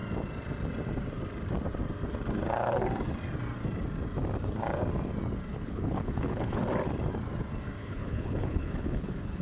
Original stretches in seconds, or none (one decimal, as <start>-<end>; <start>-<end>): 0.0-5.5; 6.6-7.8